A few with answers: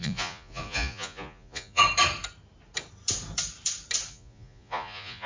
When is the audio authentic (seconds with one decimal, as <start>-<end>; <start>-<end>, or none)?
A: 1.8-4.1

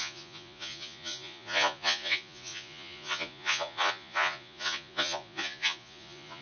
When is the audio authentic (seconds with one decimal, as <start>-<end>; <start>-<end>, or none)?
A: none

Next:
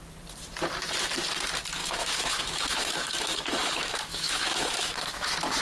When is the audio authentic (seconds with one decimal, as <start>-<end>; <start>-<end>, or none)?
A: 0.0-1.8

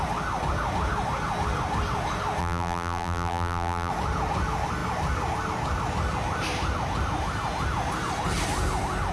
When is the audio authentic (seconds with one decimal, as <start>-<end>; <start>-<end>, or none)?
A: 0.0-2.4; 3.9-9.1

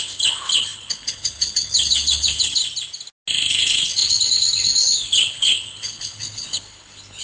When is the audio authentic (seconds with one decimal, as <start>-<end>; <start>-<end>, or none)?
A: 2.6-3.5

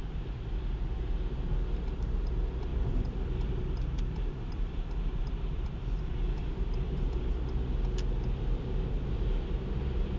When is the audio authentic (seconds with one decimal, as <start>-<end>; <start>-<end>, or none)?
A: 0.0-2.7; 6.0-10.2

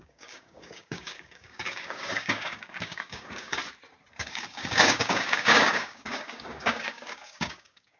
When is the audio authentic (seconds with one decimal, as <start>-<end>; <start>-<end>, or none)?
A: 3.6-4.1